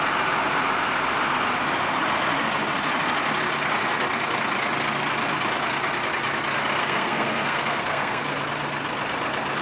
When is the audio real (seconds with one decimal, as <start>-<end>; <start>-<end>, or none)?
0.0-6.8; 8.2-9.6